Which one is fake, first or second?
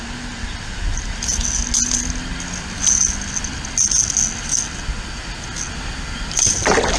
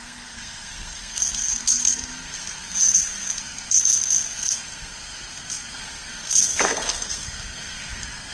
second